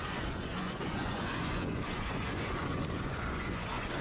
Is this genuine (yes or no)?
no